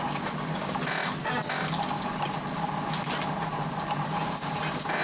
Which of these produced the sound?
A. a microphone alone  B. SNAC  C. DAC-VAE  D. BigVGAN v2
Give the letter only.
A